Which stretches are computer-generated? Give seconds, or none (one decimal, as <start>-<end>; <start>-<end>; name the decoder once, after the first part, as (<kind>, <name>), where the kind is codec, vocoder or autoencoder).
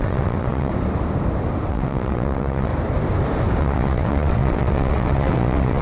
0.0-0.7 (vocoder, WaveNeXt); 1.7-2.7; 3.6-5.8